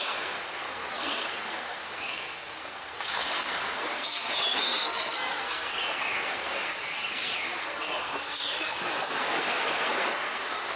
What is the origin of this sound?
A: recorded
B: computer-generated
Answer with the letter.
B